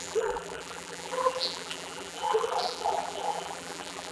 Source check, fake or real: fake